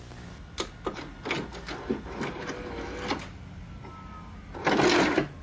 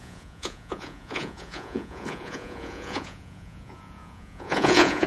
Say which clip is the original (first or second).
first